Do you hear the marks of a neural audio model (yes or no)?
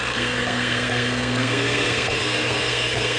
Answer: yes